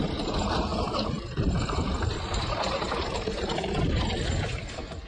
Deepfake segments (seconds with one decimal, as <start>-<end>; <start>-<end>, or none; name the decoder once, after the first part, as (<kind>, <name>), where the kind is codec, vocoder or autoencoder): 0.0-5.1 (vocoder, BigVGAN v2)